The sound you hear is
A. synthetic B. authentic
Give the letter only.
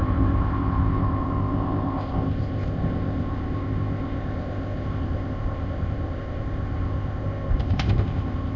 A